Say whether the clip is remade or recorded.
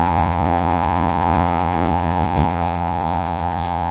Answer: remade